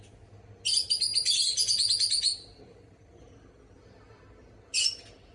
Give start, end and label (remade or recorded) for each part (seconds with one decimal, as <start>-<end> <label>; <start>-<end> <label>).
0.0-5.3 recorded